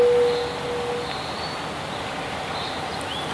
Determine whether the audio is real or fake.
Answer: real